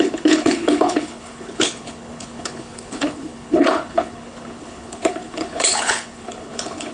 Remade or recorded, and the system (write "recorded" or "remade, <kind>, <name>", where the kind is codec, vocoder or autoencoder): remade, codec, HILCodec